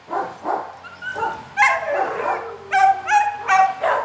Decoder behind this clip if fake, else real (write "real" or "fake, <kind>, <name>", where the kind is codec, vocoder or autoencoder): real